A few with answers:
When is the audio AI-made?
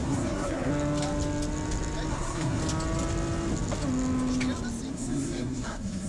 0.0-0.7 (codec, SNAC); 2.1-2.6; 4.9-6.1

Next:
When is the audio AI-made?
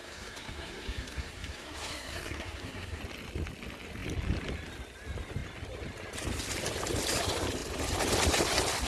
0.0-3.0 (codec, SNAC)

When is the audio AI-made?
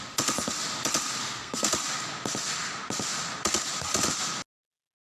1.2-1.7 (codec, SNAC)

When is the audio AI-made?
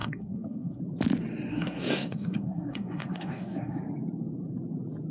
0.0-0.8 (codec, SNAC); 1.5-3.8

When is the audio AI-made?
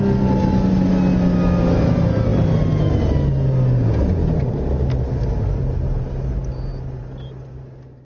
none